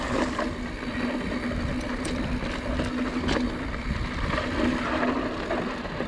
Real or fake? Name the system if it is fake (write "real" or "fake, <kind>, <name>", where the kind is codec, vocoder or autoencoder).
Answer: real